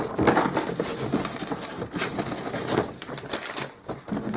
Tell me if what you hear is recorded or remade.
remade